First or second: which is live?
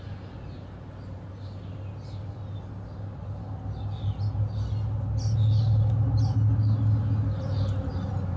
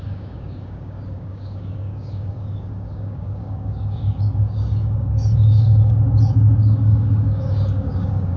first